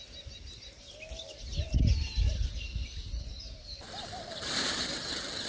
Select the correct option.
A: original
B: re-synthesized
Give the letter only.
A